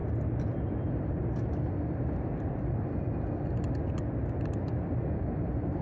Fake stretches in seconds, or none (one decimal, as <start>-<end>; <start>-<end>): none